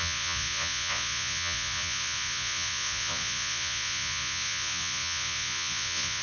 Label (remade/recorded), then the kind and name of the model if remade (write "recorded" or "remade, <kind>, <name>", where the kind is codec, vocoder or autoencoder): remade, vocoder, Vocos